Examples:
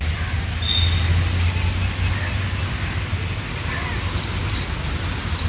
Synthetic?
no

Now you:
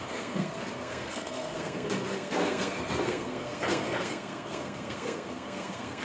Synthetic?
yes